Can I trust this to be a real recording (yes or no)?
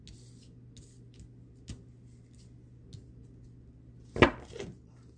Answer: yes